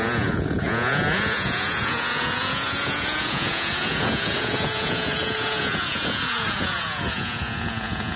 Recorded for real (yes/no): no